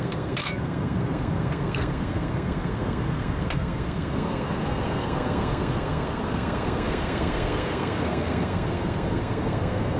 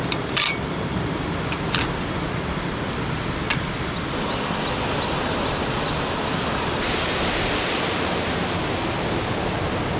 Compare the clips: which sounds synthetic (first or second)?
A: first